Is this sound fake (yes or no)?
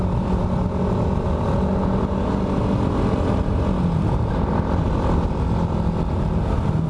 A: no